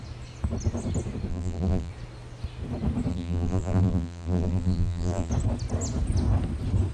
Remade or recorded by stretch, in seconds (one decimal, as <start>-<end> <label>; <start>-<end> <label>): 0.0-1.3 recorded; 1.3-1.9 remade; 1.9-3.1 recorded; 3.1-5.3 remade; 5.3-6.9 recorded